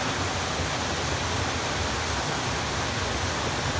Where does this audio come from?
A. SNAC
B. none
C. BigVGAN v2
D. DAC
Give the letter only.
B